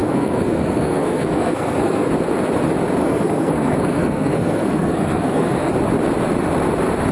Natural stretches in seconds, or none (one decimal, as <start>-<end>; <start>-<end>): 2.1-3.0; 5.7-7.1